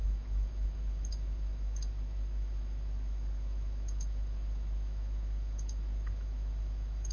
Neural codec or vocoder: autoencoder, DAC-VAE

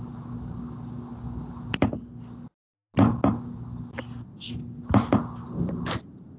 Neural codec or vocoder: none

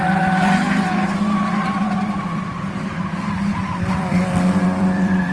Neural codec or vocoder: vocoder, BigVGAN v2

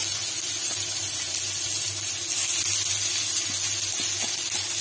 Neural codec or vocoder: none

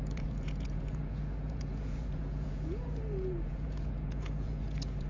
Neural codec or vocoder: vocoder, Vocos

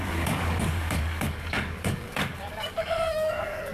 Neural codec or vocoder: codec, DAC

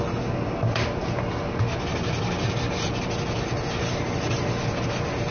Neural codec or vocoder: none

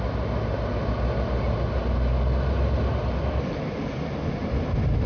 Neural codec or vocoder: none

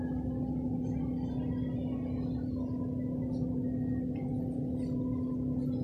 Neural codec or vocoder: none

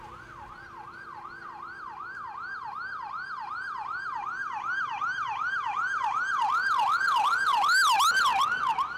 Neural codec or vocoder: none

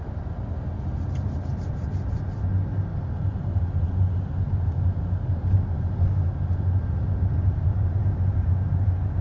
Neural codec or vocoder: none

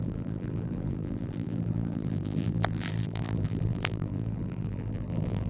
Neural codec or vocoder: vocoder, BigVGAN v2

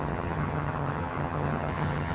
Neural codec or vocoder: vocoder, HiFi-GAN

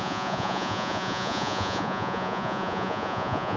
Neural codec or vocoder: vocoder, Vocos